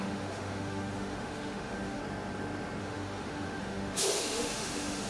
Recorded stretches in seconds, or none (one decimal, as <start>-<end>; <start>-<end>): 2.0-2.8